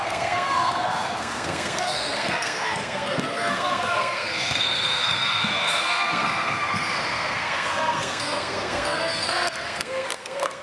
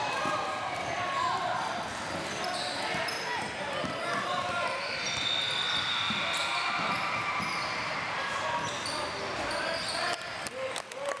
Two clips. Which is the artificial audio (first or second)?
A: first